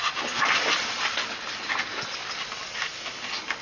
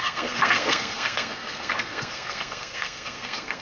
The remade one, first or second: second